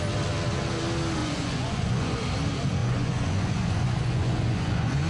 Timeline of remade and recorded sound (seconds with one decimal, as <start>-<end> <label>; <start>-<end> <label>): 0.0-1.2 recorded; 1.2-2.2 remade; 2.2-2.8 recorded; 2.8-5.1 remade